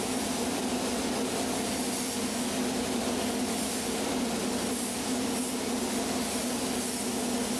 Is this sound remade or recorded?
recorded